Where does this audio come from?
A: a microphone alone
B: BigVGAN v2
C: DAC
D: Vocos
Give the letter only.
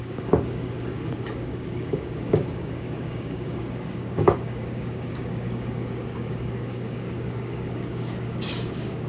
C